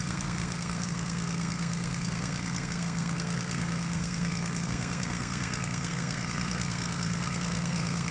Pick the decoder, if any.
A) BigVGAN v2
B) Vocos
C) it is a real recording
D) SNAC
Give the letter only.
D